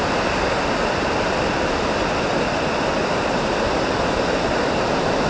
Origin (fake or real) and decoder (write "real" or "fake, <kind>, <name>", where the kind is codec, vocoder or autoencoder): real